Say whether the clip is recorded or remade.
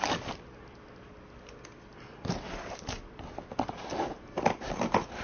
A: recorded